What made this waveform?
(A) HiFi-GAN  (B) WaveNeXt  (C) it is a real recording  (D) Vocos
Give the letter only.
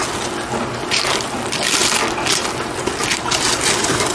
C